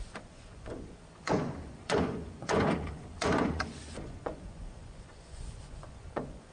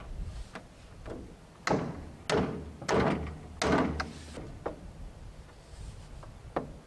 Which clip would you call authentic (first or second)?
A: second